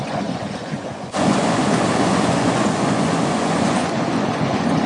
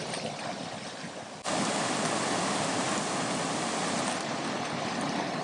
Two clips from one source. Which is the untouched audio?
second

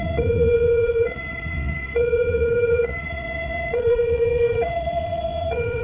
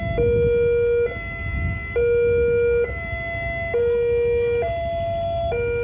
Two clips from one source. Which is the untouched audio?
second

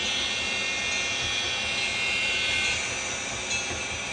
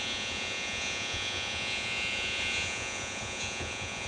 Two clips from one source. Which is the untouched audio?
first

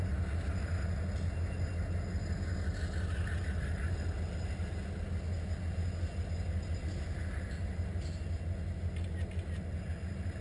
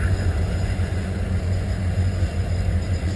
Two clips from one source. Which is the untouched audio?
first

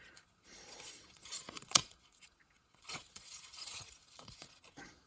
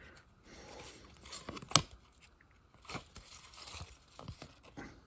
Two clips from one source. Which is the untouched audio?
second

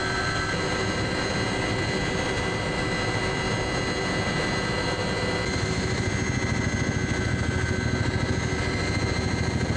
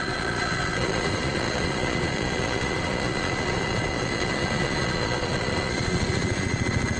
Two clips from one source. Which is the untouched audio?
first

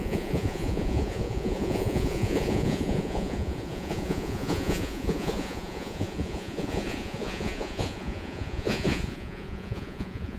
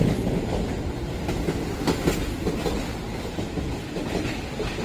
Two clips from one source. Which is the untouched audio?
second